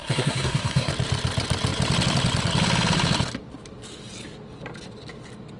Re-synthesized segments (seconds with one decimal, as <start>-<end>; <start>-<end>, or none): 0.0-0.9